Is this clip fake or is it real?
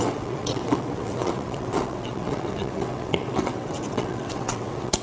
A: fake